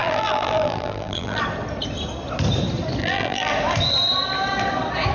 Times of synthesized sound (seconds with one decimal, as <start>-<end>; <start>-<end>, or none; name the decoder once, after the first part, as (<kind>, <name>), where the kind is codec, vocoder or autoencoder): 0.0-1.4 (vocoder, BigVGAN v2); 3.0-3.5